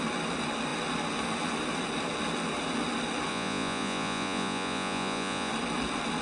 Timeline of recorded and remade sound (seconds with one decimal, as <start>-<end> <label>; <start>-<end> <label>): 0.0-3.3 recorded; 3.3-5.5 remade; 5.5-6.2 recorded